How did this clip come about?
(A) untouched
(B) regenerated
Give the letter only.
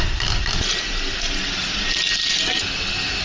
A